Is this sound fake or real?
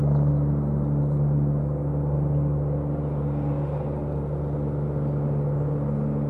real